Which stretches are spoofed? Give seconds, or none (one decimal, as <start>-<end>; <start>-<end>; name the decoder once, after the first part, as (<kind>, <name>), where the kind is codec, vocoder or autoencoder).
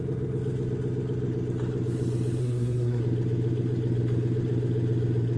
2.4-3.0 (codec, SNAC)